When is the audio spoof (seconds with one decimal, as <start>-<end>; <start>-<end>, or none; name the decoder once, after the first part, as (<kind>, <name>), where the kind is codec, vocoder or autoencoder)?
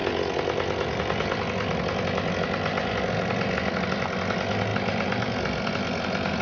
none